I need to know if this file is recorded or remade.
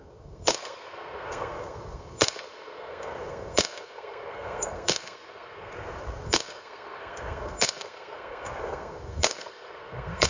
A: remade